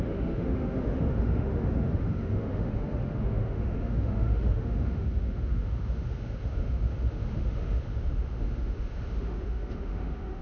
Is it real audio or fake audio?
fake